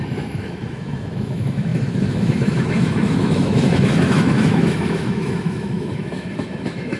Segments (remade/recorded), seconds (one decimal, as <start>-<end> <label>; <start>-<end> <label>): 0.0-7.0 remade